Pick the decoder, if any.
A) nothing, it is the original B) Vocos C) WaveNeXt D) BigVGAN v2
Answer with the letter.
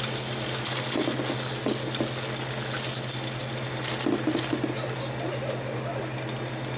A